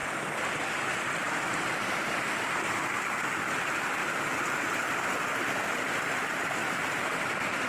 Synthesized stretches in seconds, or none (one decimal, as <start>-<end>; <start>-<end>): none